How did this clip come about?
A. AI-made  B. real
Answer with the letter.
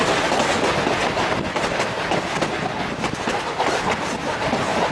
B